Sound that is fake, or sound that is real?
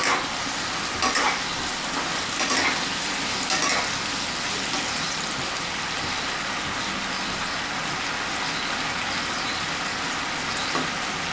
real